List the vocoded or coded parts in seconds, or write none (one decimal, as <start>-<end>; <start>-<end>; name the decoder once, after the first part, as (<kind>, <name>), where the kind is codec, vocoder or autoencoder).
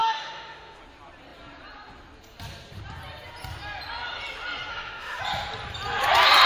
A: 0.0-0.8 (autoencoder, DAC-VAE); 4.7-5.2